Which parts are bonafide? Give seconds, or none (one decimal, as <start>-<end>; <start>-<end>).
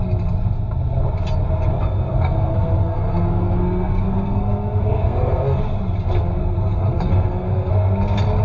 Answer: 0.0-1.7; 5.6-6.4; 7.7-8.4